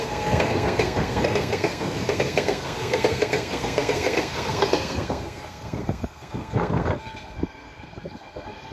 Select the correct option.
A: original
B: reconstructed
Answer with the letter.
B